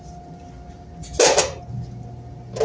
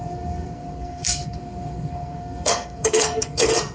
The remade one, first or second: second